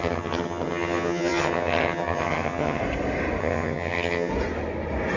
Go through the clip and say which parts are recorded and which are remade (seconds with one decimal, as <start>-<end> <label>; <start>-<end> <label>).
0.0-2.8 remade; 2.8-3.4 recorded; 3.4-4.3 remade; 4.3-5.2 recorded